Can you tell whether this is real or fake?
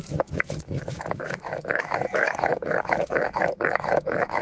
fake